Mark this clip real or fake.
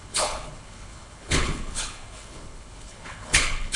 fake